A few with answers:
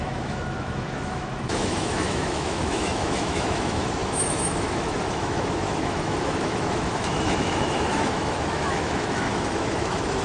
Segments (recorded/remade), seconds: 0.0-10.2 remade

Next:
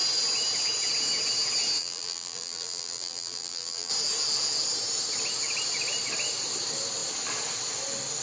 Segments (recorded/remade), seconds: 0.0-1.8 recorded; 1.8-3.9 remade; 3.9-8.2 recorded

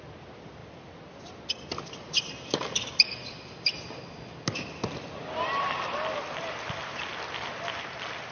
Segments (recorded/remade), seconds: 0.0-8.3 recorded

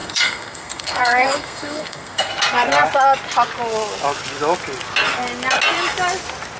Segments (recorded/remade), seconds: 0.0-2.3 remade; 2.3-6.6 recorded

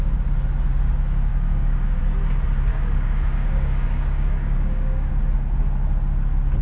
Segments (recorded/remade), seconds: 0.0-1.3 recorded; 1.3-2.0 remade; 2.0-2.7 recorded; 2.7-5.1 remade; 5.1-6.6 recorded

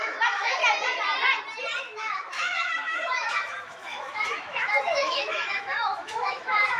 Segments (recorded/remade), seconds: 0.0-0.6 remade; 0.6-1.8 recorded; 1.8-6.8 remade

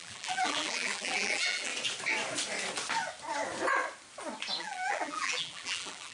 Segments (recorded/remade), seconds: 0.0-1.7 remade; 1.7-4.6 recorded; 4.6-6.1 remade

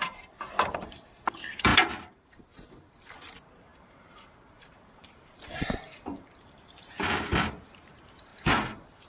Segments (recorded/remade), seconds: 0.0-7.3 remade; 7.3-7.9 recorded; 7.9-9.1 remade